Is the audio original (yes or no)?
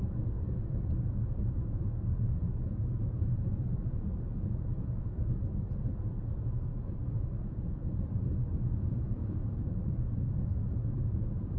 no